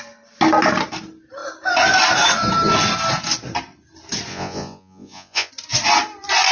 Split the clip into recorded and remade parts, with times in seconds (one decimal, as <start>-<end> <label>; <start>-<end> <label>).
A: 0.0-4.3 recorded; 4.3-5.5 remade; 5.5-6.5 recorded